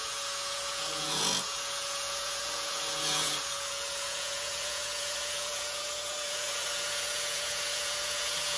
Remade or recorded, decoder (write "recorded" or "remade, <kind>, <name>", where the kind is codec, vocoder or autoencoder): remade, vocoder, Vocos